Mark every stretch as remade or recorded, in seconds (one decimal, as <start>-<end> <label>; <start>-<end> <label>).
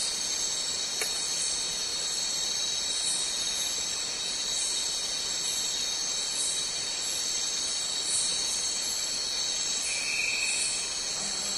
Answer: 0.0-1.9 recorded; 1.9-2.4 remade; 2.4-8.3 recorded; 8.3-9.1 remade; 9.1-11.6 recorded